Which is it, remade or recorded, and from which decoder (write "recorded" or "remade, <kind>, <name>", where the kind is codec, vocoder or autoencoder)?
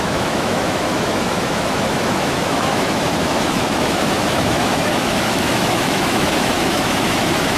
remade, autoencoder, DAC-VAE